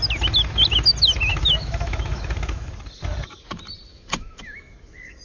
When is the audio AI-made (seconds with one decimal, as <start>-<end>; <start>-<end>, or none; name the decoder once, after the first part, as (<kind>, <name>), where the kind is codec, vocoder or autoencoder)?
1.3-2.7 (autoencoder, DAC-VAE); 3.9-5.2